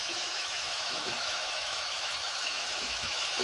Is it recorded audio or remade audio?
remade